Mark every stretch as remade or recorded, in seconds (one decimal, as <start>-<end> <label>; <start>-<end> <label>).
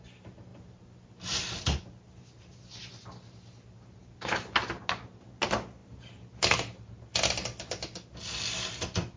0.0-9.2 recorded